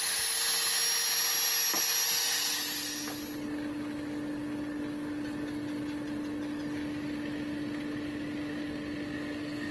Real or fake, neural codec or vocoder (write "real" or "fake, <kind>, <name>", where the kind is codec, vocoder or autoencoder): real